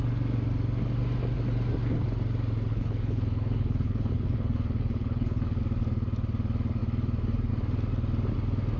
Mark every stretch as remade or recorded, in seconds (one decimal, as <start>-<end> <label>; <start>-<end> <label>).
0.0-2.7 recorded; 2.7-5.6 remade; 5.6-8.8 recorded